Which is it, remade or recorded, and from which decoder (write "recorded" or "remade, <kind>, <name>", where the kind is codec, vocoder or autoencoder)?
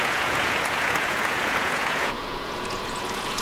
remade, vocoder, Vocos